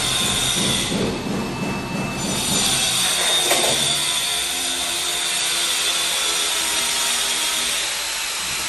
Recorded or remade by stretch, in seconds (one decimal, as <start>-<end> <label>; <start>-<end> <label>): 0.0-8.7 recorded